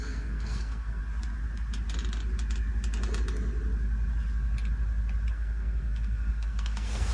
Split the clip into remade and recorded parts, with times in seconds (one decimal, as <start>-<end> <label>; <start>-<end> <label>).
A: 0.0-1.0 remade; 1.0-5.3 recorded; 5.3-7.1 remade

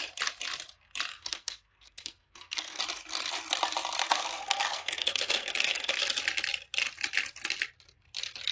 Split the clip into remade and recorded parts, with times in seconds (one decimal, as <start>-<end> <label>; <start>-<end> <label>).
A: 0.0-1.1 recorded; 1.1-2.8 remade; 2.8-4.0 recorded; 4.0-6.0 remade; 6.0-8.5 recorded

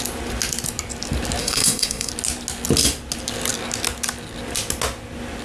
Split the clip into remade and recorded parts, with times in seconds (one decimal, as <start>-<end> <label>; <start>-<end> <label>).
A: 0.0-1.4 recorded; 1.4-2.1 remade; 2.1-5.4 recorded

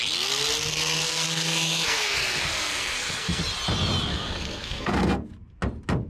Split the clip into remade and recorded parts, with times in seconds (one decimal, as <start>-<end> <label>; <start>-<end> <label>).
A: 0.0-0.7 recorded; 0.7-3.4 remade; 3.4-4.1 recorded; 4.1-5.3 remade; 5.3-6.1 recorded

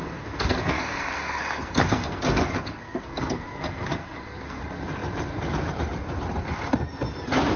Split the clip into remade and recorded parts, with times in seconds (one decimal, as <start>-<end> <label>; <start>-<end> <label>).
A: 0.0-4.6 remade; 4.6-7.6 recorded

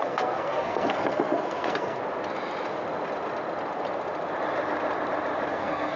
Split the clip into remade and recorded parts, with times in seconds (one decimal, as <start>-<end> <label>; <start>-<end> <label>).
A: 0.0-2.0 remade; 2.0-5.5 recorded; 5.5-6.0 remade